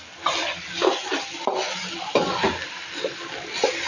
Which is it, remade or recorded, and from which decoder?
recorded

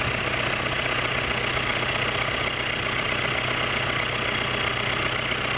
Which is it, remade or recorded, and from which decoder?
recorded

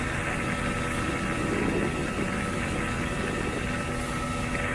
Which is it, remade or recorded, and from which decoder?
recorded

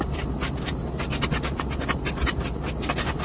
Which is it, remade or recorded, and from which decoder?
recorded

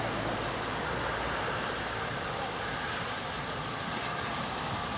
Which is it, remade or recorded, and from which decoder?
remade, vocoder, BigVGAN v2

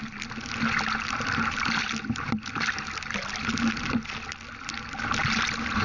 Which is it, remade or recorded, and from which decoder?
recorded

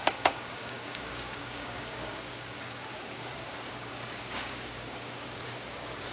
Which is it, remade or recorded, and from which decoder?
remade, codec, DAC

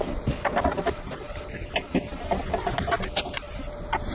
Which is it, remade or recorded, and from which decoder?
recorded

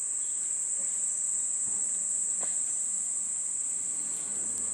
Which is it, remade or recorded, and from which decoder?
recorded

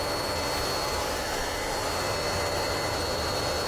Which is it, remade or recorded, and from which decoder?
recorded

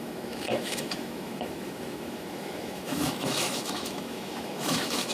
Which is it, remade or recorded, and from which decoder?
remade, autoencoder, DAC-VAE